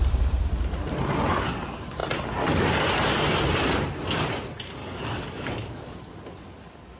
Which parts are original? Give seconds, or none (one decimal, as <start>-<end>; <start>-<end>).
0.0-4.8; 6.0-7.0